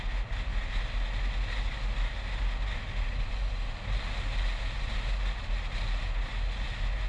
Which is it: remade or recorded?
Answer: recorded